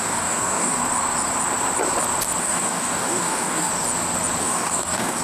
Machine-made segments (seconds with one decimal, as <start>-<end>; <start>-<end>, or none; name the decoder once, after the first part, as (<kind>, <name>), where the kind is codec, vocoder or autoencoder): 0.0-0.8 (codec, DAC); 2.4-3.7; 4.4-5.2